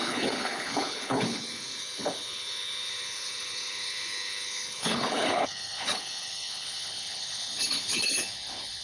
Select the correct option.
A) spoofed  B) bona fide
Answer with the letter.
A